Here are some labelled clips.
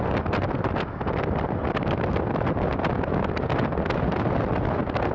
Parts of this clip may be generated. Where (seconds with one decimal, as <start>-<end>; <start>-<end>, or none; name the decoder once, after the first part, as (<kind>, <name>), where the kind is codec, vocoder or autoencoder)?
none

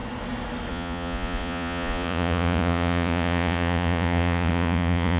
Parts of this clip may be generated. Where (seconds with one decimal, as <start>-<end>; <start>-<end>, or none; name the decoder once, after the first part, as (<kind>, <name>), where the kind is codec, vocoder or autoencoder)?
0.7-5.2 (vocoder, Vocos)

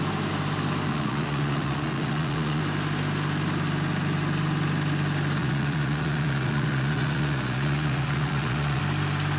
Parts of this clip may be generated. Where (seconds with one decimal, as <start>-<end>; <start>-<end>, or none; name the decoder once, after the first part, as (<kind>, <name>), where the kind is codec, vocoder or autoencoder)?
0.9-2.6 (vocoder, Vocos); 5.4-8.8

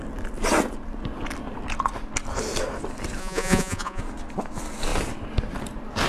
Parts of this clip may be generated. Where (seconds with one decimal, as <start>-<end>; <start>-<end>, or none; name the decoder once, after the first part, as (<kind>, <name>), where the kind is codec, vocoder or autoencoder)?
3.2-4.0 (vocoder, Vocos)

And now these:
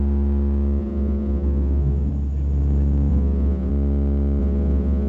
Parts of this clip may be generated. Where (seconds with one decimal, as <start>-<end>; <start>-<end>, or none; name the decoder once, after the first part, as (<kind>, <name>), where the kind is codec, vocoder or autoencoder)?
0.8-2.1 (vocoder, Vocos); 3.1-3.7; 4.4-5.1